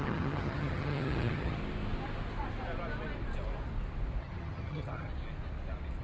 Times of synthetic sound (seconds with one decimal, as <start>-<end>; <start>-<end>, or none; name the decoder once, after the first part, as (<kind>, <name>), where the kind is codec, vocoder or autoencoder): 0.0-1.6 (vocoder, HiFi-GAN); 4.2-5.1